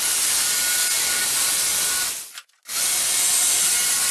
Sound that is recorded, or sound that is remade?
recorded